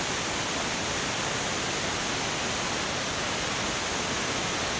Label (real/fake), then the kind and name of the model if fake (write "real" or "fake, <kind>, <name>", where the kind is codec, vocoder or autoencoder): real